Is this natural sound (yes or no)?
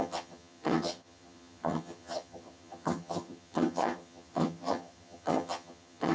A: no